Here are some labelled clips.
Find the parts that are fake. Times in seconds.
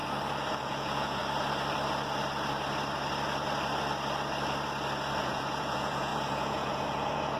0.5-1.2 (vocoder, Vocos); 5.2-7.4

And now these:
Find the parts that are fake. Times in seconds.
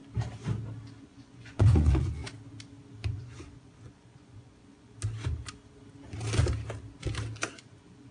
1.0-2.2 (vocoder, Vocos); 3.1-4.9; 7.5-8.1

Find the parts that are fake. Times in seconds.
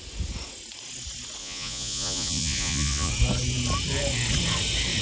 1.4-3.1 (vocoder, Vocos)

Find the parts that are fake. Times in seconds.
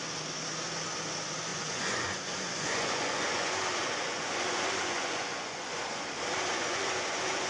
1.5-6.0 (vocoder, Vocos); 6.5-7.5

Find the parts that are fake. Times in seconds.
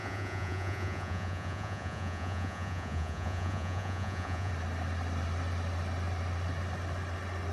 0.0-4.5 (vocoder, Vocos)